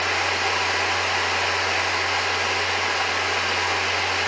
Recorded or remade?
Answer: recorded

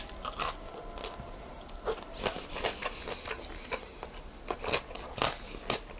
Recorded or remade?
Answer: recorded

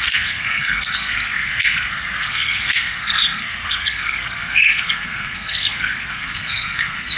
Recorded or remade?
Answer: remade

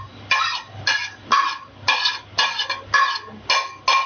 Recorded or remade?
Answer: recorded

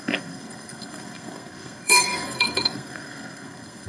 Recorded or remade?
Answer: remade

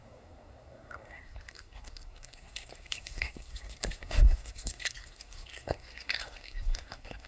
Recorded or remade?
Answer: remade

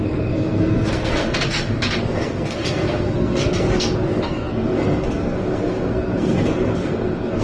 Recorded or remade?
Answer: remade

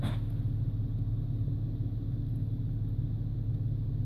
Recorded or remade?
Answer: recorded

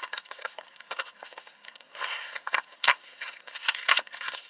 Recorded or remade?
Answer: remade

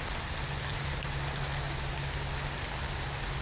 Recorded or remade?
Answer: recorded